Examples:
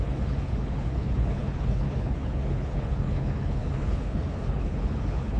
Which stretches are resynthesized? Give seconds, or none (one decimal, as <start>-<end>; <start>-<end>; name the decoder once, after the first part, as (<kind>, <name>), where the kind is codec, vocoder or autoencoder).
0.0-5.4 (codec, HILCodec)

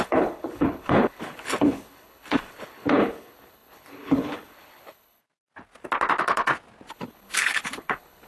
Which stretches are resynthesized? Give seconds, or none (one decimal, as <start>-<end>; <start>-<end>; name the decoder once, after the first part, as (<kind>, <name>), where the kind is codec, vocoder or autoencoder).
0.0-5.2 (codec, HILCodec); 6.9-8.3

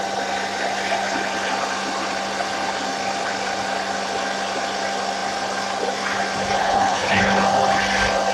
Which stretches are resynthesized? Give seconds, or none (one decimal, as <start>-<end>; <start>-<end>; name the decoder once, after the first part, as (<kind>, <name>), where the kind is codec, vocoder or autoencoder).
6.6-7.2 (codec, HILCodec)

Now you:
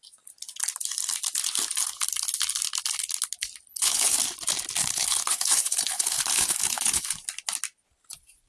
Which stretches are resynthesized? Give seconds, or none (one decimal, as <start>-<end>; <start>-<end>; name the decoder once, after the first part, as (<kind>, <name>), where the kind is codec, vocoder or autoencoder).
3.7-4.2 (codec, HILCodec); 4.8-7.0